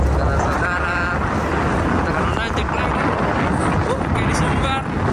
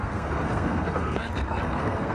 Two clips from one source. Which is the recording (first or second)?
first